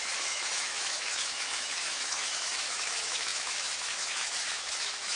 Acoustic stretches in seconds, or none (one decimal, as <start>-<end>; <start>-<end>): none